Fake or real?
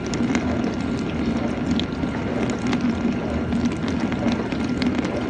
real